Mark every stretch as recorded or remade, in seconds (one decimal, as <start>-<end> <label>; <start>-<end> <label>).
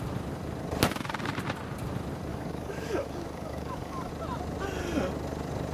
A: 0.0-2.3 recorded; 2.3-4.1 remade; 4.1-5.7 recorded